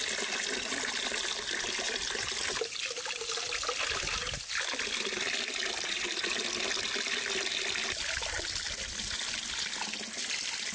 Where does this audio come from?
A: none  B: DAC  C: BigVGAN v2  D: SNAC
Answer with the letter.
A